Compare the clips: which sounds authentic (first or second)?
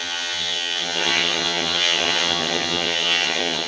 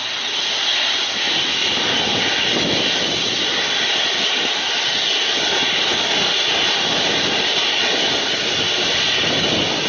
second